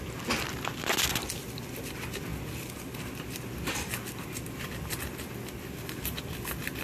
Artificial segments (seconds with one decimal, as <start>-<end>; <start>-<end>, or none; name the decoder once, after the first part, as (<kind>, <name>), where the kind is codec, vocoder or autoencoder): none